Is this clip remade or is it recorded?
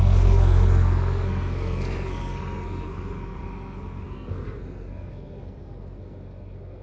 remade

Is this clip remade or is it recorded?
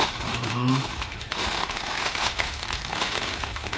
remade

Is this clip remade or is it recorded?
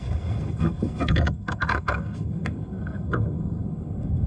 remade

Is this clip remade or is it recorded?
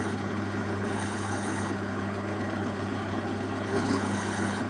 remade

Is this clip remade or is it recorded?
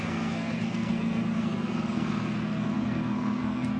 remade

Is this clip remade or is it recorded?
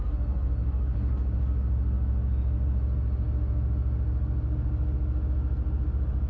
recorded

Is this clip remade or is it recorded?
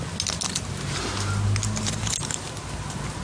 recorded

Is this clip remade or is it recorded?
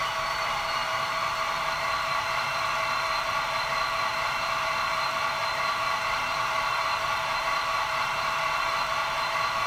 remade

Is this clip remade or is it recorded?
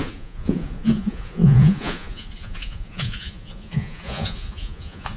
remade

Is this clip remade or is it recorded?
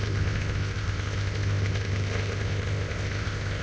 remade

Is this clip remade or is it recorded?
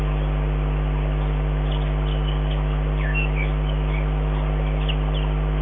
recorded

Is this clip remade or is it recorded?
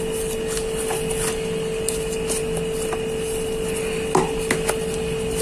recorded